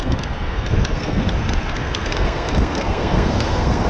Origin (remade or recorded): remade